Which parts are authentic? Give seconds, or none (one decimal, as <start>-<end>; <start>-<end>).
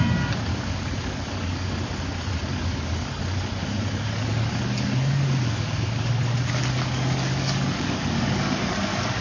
0.0-0.5; 1.7-2.5; 3.2-3.6